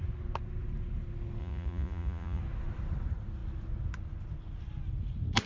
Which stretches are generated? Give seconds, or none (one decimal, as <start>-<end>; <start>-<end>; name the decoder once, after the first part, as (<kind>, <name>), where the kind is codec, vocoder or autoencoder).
1.4-2.4 (vocoder, Vocos)